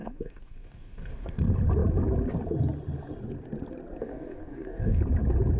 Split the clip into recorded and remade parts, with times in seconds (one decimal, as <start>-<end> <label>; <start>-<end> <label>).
0.0-1.4 remade; 1.4-4.0 recorded; 4.0-5.0 remade; 5.0-5.6 recorded